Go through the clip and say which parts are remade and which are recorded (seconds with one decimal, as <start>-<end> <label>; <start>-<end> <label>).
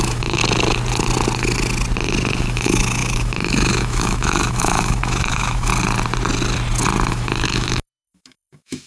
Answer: 0.0-0.4 remade; 0.4-2.4 recorded; 2.4-5.7 remade; 5.7-7.1 recorded; 7.1-8.9 remade